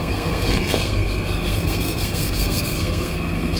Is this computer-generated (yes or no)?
yes